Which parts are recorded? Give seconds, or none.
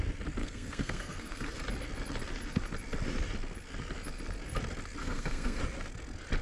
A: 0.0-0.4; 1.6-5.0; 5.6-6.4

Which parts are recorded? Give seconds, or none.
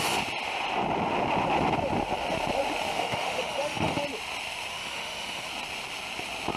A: 0.0-2.9; 4.0-4.7; 5.5-6.6